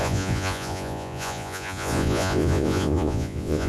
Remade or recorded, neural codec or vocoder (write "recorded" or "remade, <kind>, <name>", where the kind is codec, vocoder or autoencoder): remade, vocoder, Vocos